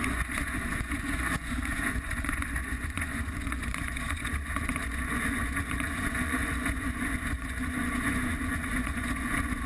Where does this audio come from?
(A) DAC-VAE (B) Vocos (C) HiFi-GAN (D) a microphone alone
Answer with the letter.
B